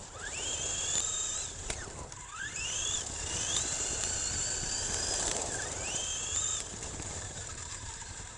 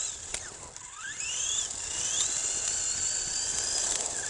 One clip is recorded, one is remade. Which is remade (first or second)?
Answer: first